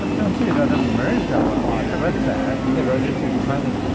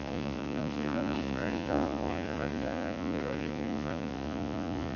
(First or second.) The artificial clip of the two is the second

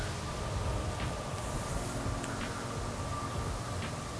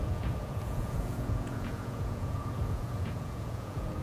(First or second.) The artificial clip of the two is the second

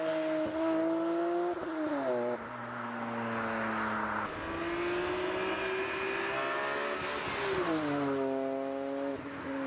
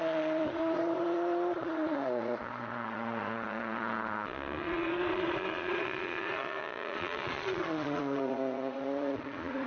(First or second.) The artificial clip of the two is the second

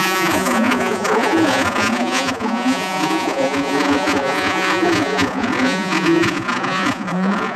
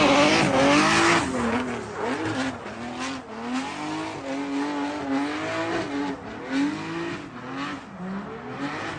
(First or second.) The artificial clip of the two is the first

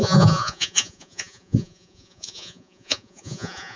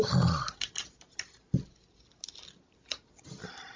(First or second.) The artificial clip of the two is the first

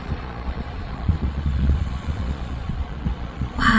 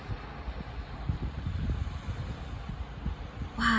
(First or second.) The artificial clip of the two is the first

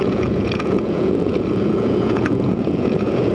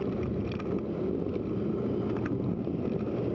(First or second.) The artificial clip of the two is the first